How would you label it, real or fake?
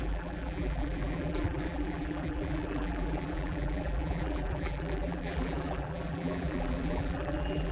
fake